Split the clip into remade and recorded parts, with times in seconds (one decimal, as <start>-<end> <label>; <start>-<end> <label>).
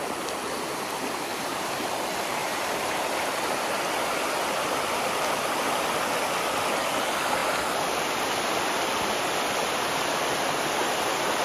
0.0-1.3 recorded; 1.3-1.9 remade; 1.9-2.4 recorded; 2.4-3.0 remade; 3.0-11.4 recorded